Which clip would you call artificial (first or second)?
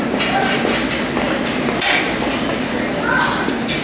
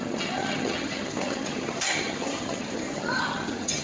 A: second